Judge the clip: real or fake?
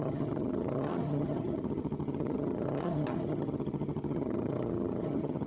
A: fake